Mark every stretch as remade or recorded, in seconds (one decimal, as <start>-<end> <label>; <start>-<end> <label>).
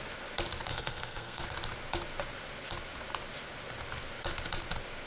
0.0-0.7 recorded; 0.7-1.4 remade; 1.4-5.1 recorded